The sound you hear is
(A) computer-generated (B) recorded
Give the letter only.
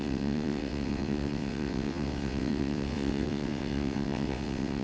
A